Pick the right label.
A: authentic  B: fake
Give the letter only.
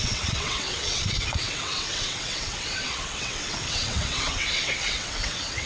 B